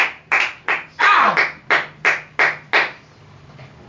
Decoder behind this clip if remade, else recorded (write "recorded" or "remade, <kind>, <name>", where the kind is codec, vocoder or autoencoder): recorded